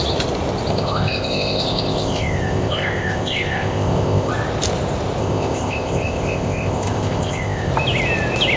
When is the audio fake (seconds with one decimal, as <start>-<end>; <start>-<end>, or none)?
0.7-4.3; 5.2-7.7